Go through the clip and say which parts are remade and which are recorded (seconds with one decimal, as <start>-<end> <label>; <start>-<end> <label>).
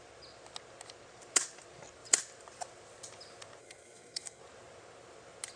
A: 0.0-3.6 recorded; 3.6-4.4 remade; 4.4-5.6 recorded